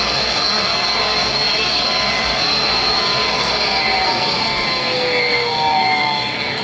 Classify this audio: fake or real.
fake